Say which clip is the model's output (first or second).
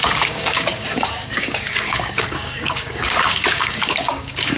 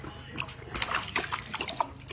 first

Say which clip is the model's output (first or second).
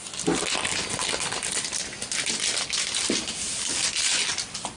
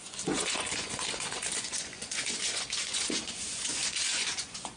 second